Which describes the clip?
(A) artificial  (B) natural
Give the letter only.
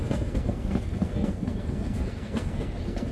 A